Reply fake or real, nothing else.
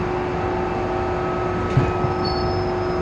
real